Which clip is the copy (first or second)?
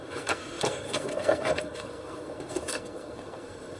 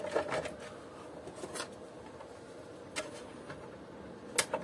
first